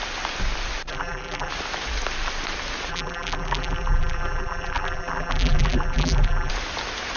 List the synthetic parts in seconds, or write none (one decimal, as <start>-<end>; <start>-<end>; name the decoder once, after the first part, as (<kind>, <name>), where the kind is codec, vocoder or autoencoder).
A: 0.9-1.5 (vocoder, BigVGAN v2); 2.9-6.5